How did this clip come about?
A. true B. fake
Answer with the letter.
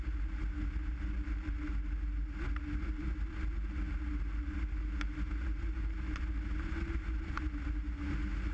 A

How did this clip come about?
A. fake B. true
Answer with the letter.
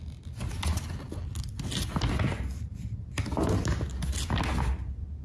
B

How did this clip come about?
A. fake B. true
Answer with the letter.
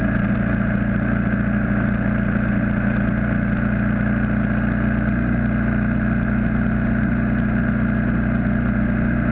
B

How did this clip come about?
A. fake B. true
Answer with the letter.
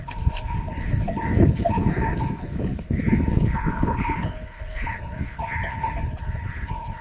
A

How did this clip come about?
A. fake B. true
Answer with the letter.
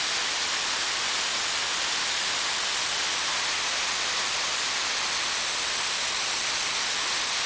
B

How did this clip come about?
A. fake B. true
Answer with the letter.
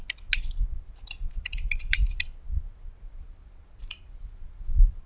B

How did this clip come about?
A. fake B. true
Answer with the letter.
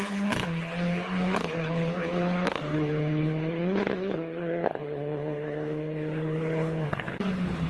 A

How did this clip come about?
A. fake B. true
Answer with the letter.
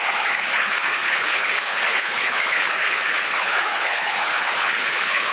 A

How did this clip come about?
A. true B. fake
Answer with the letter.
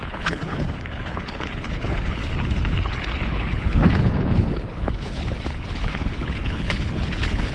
B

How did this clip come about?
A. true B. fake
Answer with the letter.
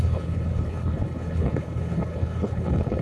B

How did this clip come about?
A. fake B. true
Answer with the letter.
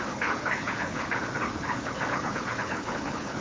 A